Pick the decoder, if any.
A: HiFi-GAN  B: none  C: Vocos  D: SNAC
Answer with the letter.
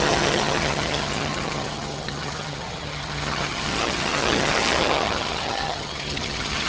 A